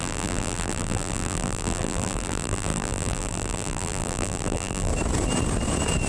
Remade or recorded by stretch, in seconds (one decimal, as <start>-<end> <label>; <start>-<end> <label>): 0.0-4.9 remade; 4.9-6.1 recorded